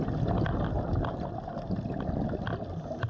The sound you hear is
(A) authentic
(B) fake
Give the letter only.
A